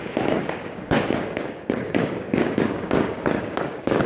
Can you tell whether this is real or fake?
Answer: fake